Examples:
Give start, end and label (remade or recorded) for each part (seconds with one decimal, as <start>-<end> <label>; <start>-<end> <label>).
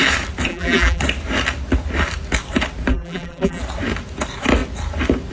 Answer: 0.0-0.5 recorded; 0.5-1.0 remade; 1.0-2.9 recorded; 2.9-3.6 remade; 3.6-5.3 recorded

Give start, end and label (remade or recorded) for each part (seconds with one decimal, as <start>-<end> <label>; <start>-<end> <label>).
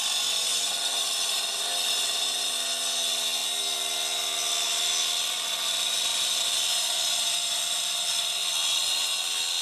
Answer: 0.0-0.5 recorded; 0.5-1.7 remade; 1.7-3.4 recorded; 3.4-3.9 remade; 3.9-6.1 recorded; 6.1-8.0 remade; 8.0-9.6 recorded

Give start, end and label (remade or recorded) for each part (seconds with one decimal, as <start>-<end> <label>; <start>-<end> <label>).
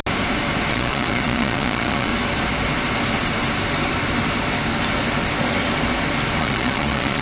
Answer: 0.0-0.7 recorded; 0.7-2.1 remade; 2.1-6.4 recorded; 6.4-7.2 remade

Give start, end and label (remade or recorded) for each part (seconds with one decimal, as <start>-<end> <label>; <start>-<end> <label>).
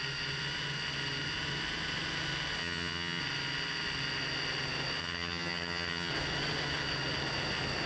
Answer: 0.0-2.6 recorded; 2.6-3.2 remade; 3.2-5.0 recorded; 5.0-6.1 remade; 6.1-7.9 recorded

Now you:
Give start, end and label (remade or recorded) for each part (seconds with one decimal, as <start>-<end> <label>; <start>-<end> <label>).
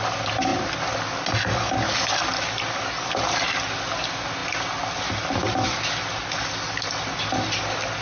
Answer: 0.0-8.0 recorded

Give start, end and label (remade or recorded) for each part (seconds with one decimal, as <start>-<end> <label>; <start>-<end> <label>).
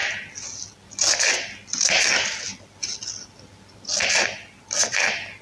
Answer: 0.0-5.4 recorded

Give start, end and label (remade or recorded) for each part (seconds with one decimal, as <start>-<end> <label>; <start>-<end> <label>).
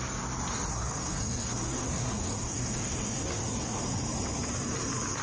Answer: 0.0-0.7 recorded; 0.7-3.8 remade; 3.8-5.2 recorded